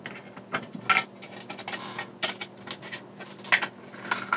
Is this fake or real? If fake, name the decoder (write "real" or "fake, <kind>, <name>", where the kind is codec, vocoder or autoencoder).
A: real